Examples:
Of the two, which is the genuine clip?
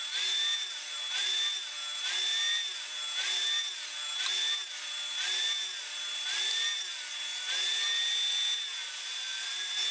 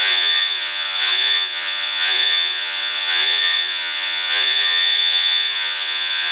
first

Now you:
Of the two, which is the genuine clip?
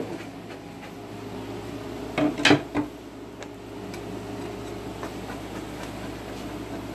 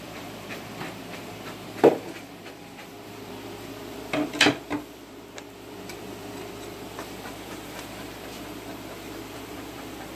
first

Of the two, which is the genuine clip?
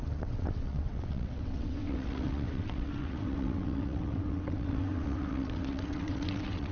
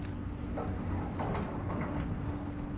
second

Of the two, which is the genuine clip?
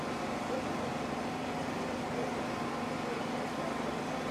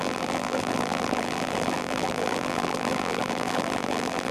first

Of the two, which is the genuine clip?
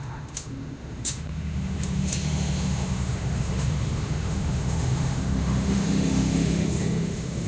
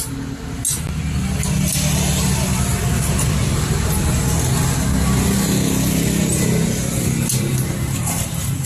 second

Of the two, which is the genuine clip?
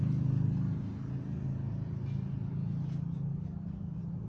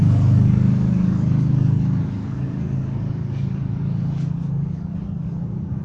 first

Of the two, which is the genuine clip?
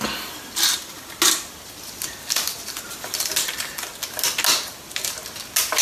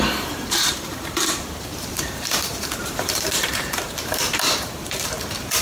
first